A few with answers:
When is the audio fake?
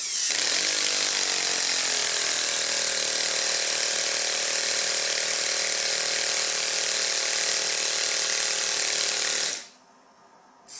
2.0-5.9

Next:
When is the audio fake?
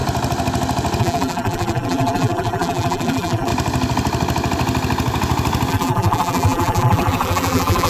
1.0-3.5; 5.7-7.9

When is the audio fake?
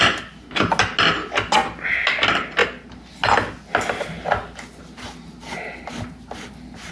5.4-6.5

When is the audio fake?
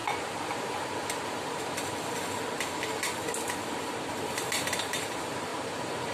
3.7-6.1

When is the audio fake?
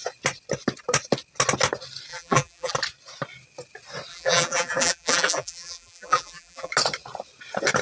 2.1-2.7; 4.1-6.7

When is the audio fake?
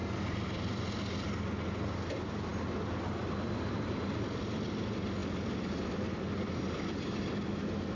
0.0-0.8; 5.2-7.2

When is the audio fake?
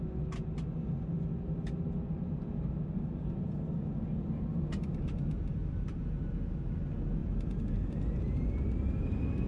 7.2-9.5